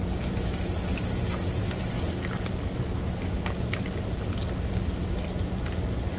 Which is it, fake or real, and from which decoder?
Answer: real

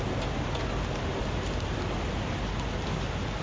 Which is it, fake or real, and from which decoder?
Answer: real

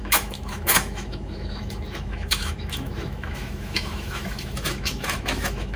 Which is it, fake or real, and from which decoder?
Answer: fake, autoencoder, DAC-VAE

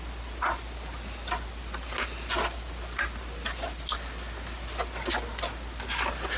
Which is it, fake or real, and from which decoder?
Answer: real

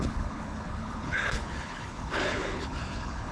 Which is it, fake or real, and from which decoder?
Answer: fake, codec, HILCodec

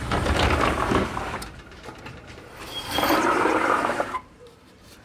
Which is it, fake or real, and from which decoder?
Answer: fake, vocoder, BigVGAN v2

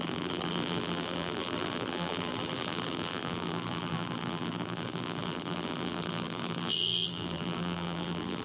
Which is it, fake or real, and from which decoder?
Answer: fake, vocoder, BigVGAN v2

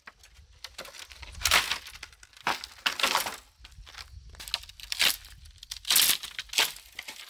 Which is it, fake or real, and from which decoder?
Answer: real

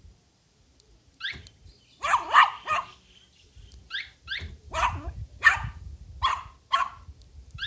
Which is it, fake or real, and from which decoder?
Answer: real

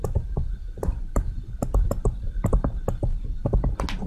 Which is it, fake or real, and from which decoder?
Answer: real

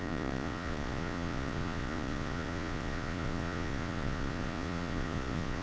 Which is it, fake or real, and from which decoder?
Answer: fake, vocoder, Vocos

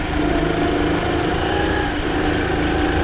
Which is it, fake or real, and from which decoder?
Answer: real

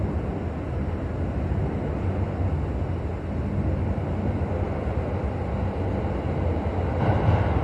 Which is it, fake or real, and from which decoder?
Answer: real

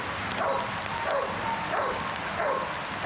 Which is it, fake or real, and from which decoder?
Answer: real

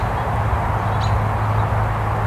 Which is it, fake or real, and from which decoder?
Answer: real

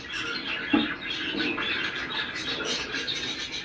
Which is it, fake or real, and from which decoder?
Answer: real